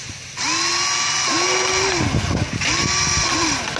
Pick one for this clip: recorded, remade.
recorded